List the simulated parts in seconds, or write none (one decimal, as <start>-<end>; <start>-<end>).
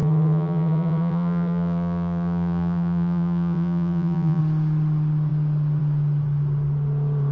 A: 0.0-4.4